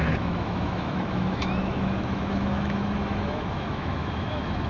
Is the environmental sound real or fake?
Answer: fake